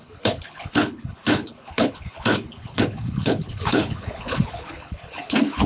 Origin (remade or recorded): remade